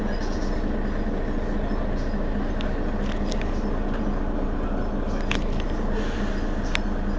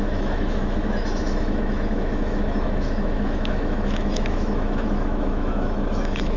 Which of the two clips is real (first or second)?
first